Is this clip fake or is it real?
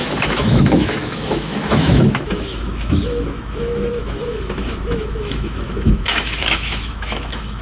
fake